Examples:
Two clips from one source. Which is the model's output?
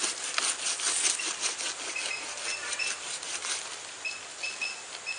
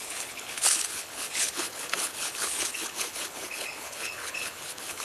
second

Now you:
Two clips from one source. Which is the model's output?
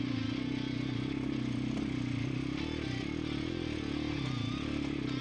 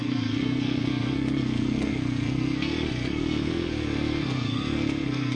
second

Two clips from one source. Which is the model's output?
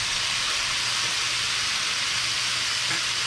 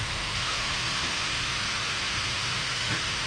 second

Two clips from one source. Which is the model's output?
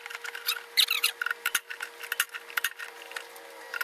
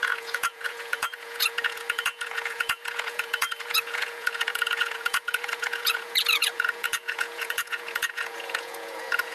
second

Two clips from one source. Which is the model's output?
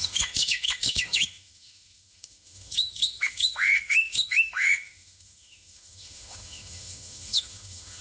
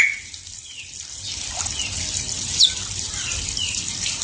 first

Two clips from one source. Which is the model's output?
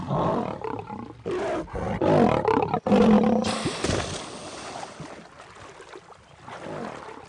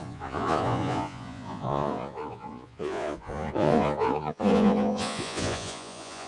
second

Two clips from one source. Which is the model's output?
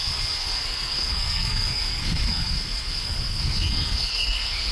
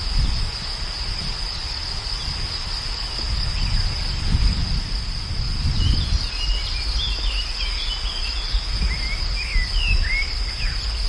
first